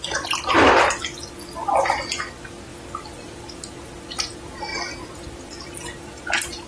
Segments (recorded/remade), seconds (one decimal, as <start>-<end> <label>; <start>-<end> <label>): 0.0-2.7 recorded; 2.7-3.6 remade; 3.6-6.7 recorded